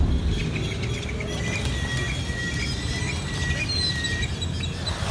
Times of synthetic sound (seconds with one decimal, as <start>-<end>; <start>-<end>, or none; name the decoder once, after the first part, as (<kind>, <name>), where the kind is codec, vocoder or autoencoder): none